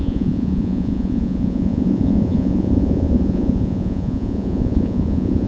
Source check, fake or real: fake